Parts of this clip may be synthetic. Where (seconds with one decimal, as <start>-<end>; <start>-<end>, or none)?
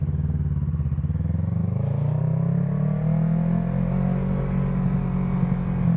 none